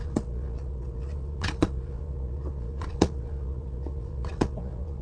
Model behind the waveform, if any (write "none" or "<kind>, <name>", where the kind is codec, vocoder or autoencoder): vocoder, Vocos